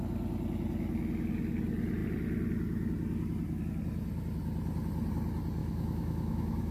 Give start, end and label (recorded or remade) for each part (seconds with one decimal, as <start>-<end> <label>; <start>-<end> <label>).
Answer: 0.0-5.6 recorded; 5.6-6.7 remade